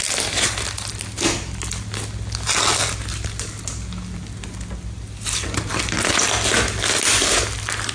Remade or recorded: recorded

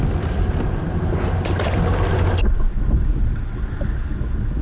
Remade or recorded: recorded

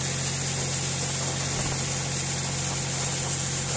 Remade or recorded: recorded